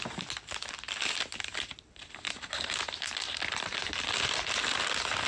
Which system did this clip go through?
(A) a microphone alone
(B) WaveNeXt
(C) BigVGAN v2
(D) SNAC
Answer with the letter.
A